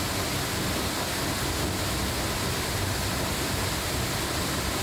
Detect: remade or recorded recorded